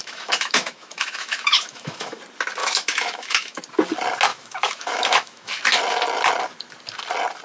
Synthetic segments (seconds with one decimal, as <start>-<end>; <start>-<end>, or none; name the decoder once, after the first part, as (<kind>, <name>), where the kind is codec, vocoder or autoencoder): 0.0-2.2 (autoencoder, DAC-VAE); 2.6-3.6; 4.3-5.5